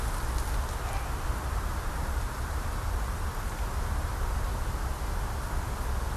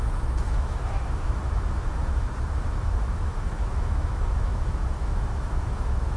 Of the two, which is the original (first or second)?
first